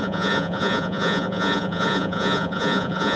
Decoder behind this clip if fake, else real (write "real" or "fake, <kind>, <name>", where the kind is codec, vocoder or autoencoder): fake, vocoder, Vocos